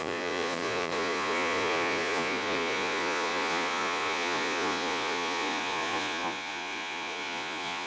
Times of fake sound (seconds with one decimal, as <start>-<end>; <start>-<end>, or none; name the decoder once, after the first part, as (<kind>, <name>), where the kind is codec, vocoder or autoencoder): 0.0-7.9 (vocoder, Vocos)